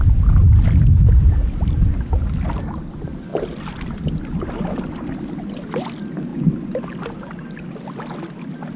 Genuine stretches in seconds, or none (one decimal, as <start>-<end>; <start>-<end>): 0.0-8.8